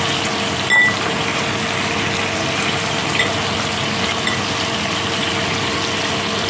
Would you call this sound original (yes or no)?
yes